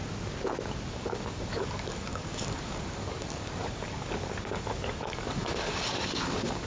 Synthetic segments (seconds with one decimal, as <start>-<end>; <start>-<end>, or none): 0.9-6.7